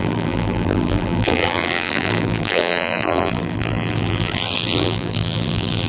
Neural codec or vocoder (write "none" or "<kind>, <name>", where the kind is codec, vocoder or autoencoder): vocoder, BigVGAN v2